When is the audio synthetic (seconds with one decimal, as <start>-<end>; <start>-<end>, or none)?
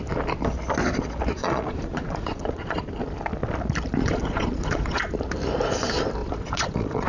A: 1.4-2.9; 4.0-5.0; 6.2-7.1